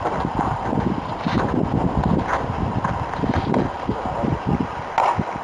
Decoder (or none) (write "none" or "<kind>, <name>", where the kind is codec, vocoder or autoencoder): none